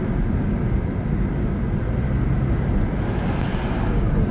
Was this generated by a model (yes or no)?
no